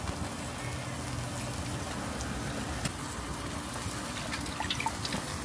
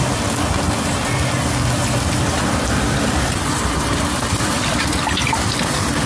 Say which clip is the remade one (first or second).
second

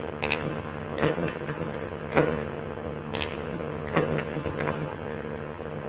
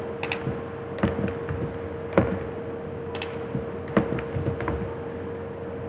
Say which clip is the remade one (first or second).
first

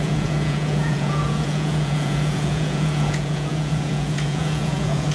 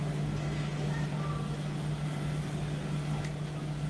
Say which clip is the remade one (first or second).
first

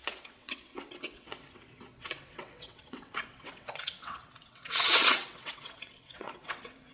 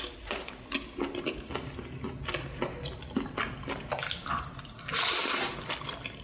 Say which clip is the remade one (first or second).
first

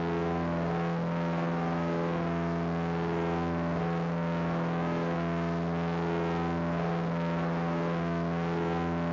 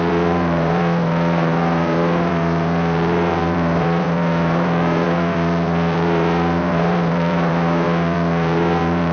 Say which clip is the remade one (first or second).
second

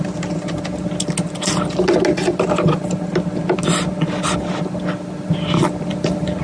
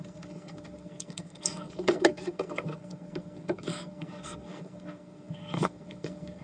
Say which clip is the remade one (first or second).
second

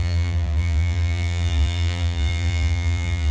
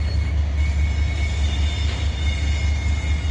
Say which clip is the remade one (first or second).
first